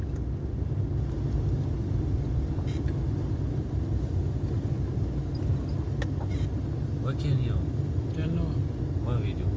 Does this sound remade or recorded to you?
recorded